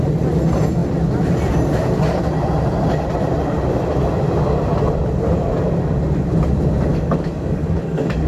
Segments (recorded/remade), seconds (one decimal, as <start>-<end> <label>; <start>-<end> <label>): 0.0-6.9 recorded; 6.9-8.3 remade